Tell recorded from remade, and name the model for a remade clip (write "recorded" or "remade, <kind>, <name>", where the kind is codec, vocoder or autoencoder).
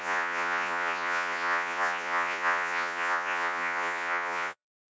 remade, vocoder, Vocos